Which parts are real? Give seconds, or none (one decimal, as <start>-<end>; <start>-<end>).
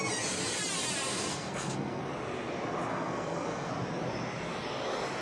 0.0-1.3; 2.0-2.9; 3.7-5.2